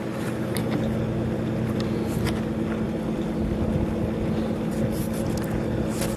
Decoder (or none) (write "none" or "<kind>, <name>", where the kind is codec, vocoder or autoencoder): none